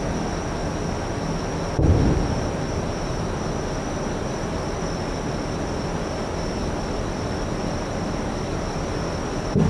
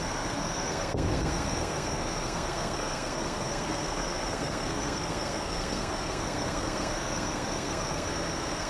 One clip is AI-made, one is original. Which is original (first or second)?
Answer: first